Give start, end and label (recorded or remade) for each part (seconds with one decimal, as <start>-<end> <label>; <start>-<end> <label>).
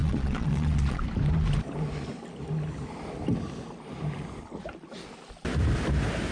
0.0-1.0 remade; 1.0-6.3 recorded